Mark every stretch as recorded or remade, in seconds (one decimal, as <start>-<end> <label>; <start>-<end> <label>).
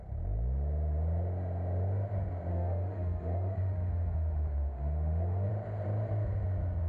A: 0.0-2.5 recorded; 2.5-5.5 remade; 5.5-6.9 recorded